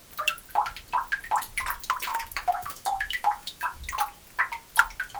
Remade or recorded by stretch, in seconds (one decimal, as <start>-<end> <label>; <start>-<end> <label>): 0.0-2.1 recorded; 2.1-3.8 remade; 3.8-5.2 recorded